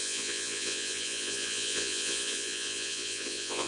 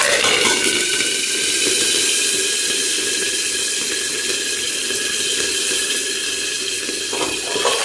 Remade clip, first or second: first